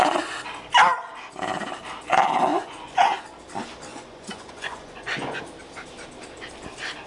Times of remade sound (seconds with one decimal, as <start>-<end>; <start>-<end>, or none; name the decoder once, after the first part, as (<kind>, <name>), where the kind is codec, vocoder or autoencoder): 2.5-3.2 (vocoder, Vocos); 3.9-5.4